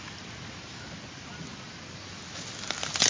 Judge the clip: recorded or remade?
recorded